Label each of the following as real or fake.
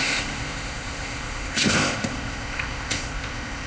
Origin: fake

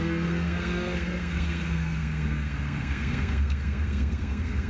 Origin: fake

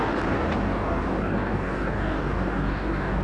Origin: fake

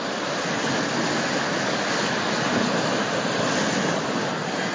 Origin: real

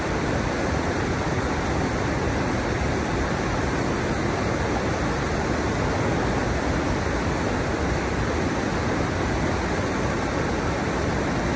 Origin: real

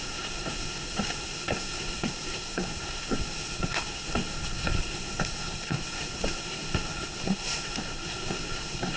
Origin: fake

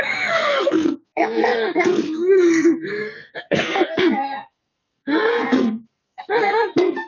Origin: fake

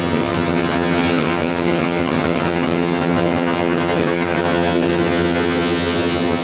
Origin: fake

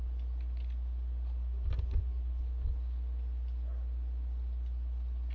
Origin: real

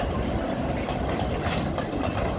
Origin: real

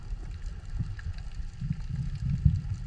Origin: real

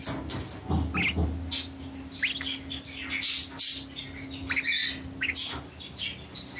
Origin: real